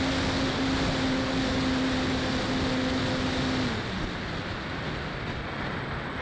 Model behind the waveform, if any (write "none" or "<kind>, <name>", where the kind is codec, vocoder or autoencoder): none